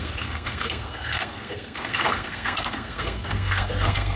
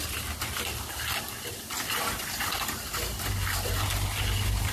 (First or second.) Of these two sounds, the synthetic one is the first